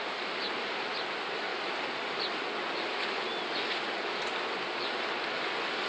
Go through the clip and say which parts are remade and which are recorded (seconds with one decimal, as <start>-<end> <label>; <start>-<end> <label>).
0.0-5.9 recorded